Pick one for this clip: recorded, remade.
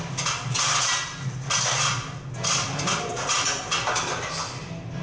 recorded